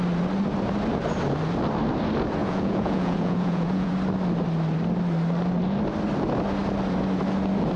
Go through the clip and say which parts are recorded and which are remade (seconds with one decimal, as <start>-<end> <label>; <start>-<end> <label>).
0.0-2.4 recorded; 2.4-3.9 remade; 3.9-7.8 recorded